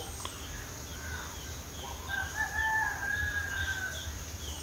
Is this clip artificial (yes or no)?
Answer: no